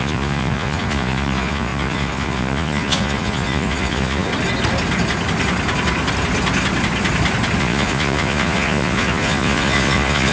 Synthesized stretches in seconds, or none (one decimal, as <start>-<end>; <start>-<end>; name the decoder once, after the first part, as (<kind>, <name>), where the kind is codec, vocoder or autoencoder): 0.0-4.3 (vocoder, Vocos); 7.6-10.3